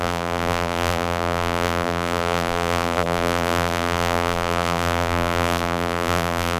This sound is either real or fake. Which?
fake